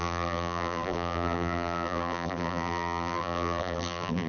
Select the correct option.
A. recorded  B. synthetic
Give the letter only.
B